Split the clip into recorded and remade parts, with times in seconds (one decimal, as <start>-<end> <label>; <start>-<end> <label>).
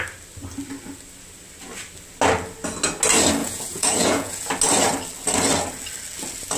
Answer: 0.0-3.4 recorded; 3.4-4.5 remade; 4.5-6.6 recorded